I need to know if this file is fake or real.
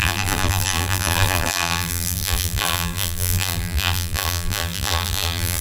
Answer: fake